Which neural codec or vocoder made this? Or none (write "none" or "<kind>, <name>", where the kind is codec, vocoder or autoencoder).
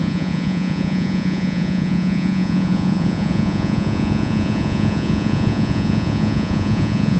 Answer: vocoder, Vocos